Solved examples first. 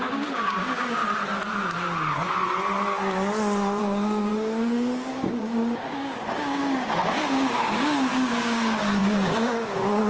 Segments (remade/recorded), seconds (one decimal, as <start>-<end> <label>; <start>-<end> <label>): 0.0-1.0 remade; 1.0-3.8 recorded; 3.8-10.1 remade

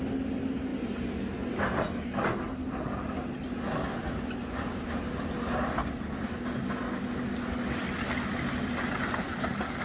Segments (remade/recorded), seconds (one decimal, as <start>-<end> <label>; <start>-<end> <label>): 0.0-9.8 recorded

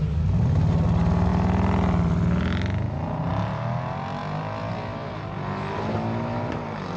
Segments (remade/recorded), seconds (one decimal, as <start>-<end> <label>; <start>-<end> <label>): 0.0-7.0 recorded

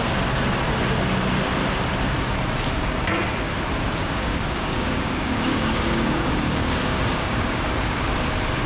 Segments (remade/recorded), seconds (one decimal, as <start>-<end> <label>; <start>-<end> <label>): 0.0-4.0 recorded; 4.0-8.0 remade; 8.0-8.7 recorded

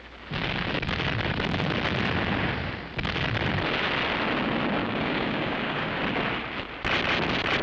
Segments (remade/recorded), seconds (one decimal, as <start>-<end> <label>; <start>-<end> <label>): 0.0-4.8 recorded; 4.8-6.0 remade; 6.0-7.6 recorded